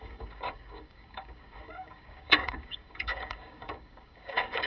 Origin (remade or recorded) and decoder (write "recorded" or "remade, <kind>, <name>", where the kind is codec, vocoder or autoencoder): remade, codec, DAC